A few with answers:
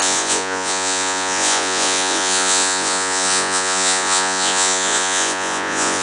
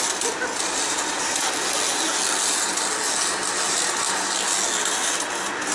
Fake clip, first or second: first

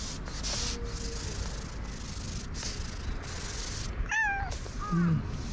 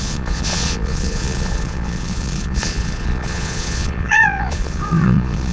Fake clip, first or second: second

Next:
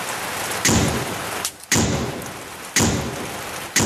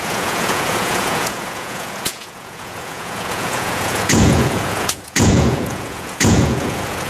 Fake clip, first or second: second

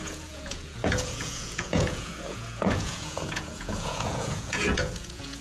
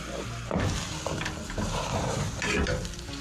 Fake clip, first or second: first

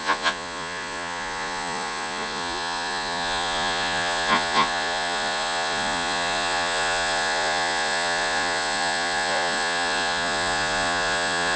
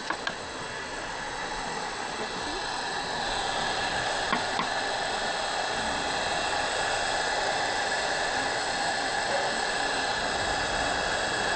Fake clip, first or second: first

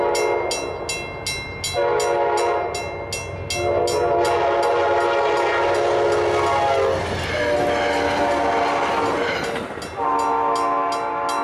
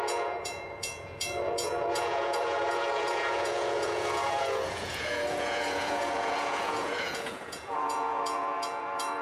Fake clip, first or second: second